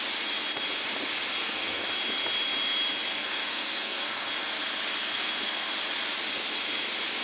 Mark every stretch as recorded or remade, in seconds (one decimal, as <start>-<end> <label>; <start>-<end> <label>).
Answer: 0.0-1.4 recorded; 1.4-1.9 remade; 1.9-3.1 recorded; 3.1-4.3 remade; 4.3-5.0 recorded; 5.0-5.7 remade; 5.7-7.2 recorded